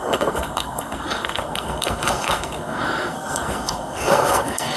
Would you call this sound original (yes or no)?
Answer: no